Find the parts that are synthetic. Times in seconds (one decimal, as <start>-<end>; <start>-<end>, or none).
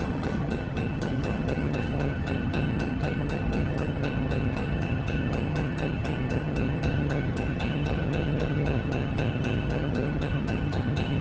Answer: 0.0-11.2